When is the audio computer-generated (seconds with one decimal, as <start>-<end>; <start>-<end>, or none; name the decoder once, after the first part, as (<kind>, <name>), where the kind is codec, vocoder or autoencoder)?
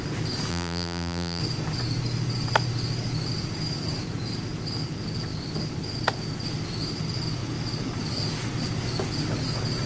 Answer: 0.5-1.4 (vocoder, BigVGAN v2)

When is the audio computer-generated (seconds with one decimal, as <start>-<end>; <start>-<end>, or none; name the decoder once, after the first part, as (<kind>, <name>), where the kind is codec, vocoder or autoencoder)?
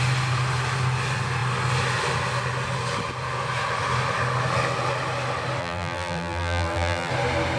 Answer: 5.6-7.1 (vocoder, BigVGAN v2)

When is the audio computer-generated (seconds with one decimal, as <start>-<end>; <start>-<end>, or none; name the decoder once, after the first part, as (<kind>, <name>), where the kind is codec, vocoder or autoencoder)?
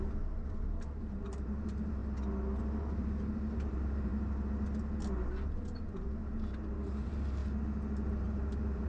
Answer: 0.0-2.0 (vocoder, BigVGAN v2); 2.6-4.1; 5.9-7.4; 8.1-8.9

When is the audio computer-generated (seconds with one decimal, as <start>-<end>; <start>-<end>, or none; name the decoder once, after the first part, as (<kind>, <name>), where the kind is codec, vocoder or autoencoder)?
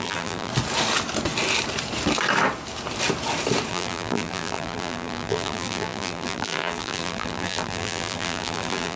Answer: 0.0-0.5 (vocoder, BigVGAN v2); 3.7-9.0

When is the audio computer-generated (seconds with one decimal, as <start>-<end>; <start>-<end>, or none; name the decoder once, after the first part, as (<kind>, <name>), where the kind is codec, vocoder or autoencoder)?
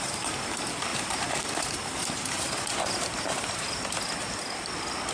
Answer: 0.9-4.0 (vocoder, BigVGAN v2)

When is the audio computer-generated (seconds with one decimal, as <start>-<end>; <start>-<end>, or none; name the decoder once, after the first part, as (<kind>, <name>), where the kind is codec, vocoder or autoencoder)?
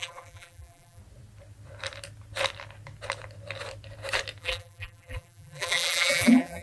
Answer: 0.0-1.0 (vocoder, BigVGAN v2); 4.4-6.6